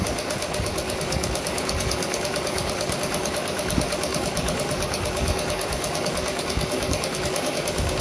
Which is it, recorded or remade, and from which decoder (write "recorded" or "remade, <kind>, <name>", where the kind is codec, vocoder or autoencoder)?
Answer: remade, codec, DAC